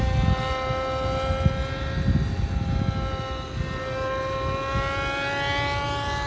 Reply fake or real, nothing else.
real